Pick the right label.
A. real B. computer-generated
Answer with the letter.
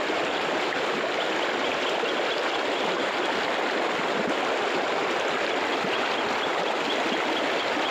A